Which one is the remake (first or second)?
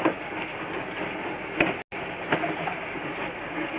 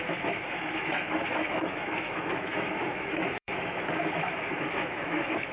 second